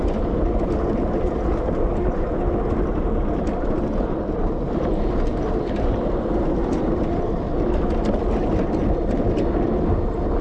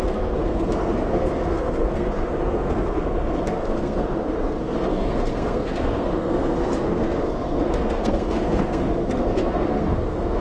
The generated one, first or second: second